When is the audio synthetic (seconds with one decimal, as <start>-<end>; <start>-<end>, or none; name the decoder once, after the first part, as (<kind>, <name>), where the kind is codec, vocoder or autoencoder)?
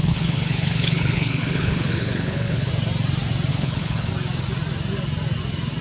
0.0-2.7 (codec, HILCodec); 3.5-4.1